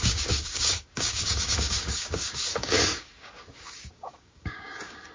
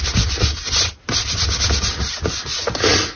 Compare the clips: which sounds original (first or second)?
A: second